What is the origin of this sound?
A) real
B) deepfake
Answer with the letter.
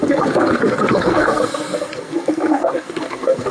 B